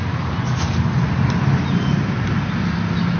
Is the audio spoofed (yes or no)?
no